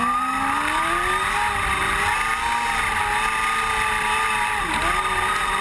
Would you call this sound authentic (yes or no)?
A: yes